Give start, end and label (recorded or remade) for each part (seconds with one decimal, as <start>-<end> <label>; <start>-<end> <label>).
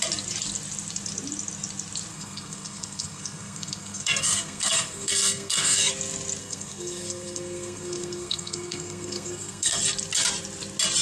0.0-2.1 recorded; 2.1-5.9 remade; 5.9-6.4 recorded; 6.4-9.8 remade; 9.8-11.0 recorded